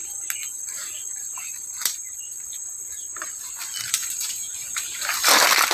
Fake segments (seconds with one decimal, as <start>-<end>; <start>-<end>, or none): 0.0-0.6; 1.2-3.3; 4.0-5.3